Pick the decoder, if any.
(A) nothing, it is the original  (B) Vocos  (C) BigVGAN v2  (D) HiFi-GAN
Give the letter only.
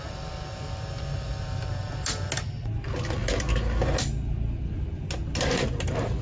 A